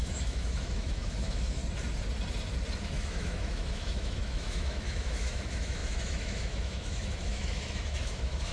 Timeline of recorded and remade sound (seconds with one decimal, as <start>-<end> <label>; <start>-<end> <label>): 0.0-1.6 remade; 1.6-2.8 recorded; 2.8-8.5 remade